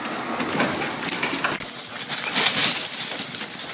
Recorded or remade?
recorded